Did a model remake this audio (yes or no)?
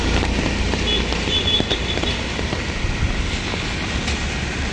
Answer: no